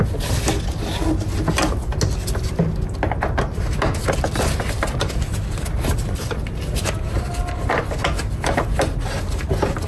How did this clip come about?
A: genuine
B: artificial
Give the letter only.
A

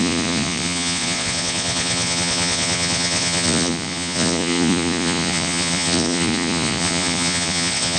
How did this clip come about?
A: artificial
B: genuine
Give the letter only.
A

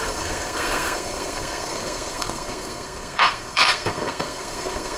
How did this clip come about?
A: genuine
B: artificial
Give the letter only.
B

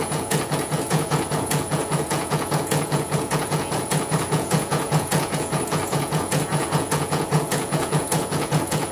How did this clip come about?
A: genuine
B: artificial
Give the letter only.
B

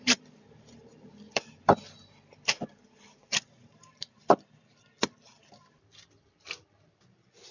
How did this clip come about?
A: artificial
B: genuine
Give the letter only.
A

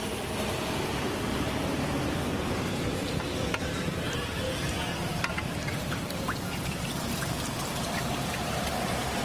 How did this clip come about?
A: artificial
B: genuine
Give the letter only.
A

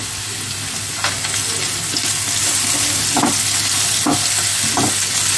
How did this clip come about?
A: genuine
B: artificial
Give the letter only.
A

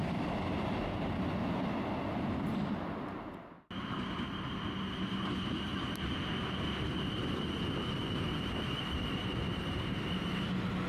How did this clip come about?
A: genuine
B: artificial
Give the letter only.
A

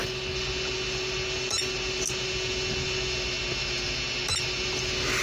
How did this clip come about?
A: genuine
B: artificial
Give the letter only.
A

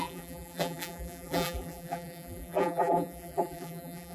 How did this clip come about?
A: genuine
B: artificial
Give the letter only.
B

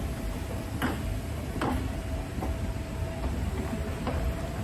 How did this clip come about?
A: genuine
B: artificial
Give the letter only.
A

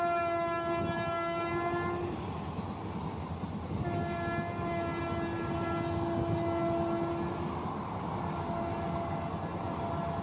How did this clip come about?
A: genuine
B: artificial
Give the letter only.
A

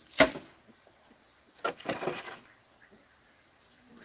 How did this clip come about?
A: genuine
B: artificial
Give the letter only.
B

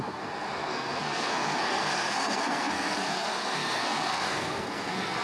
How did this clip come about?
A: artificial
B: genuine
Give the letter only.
A